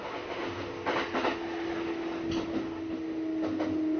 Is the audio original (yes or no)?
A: yes